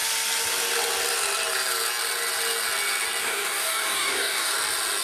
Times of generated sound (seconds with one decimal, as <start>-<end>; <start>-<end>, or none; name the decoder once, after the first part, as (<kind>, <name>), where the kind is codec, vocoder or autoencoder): 3.2-4.5 (codec, DAC)